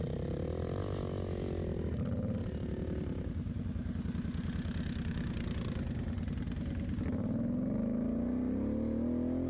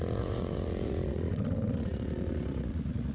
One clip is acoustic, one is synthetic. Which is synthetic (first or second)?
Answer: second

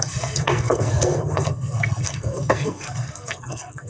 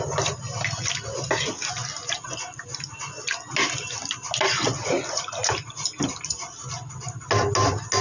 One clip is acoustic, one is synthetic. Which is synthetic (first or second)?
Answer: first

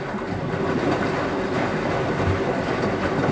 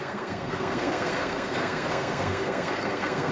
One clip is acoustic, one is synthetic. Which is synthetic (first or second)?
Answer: second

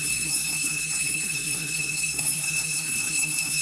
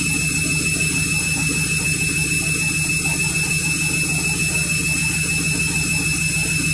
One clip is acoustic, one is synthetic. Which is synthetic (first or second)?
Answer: first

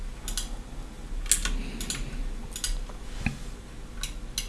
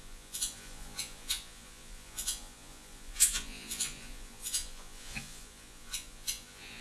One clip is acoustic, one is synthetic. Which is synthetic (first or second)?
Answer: second